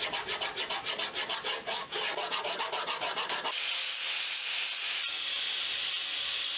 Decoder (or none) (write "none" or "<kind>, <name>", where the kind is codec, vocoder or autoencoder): none